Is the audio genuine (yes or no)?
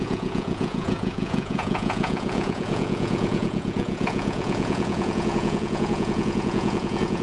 no